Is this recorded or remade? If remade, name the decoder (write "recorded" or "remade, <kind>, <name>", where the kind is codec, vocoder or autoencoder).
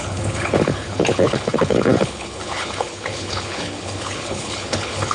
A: remade, codec, HILCodec